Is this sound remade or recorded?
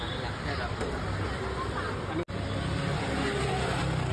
recorded